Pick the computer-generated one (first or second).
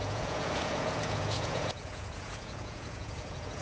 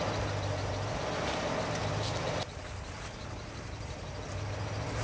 first